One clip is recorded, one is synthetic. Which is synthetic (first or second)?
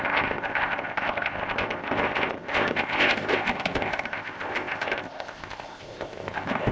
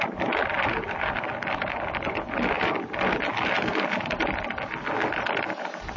first